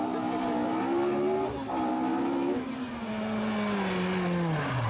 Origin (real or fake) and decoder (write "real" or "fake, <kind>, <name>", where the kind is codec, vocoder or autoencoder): real